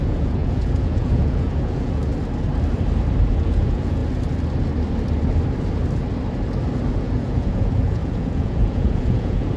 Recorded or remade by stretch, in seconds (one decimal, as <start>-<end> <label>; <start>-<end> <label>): 0.0-2.1 remade; 2.1-3.3 recorded; 3.3-4.0 remade; 4.0-6.9 recorded; 6.9-9.6 remade